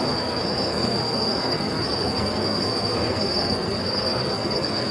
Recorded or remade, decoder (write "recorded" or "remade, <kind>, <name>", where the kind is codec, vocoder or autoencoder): remade, codec, SNAC